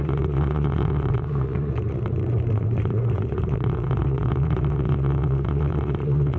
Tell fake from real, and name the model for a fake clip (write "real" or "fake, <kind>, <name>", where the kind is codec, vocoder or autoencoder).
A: fake, vocoder, Vocos